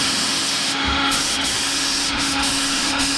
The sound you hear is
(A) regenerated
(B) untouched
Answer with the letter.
A